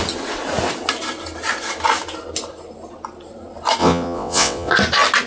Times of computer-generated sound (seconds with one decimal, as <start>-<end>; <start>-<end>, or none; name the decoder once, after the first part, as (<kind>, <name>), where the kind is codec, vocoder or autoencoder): 3.8-4.7 (vocoder, WaveNeXt)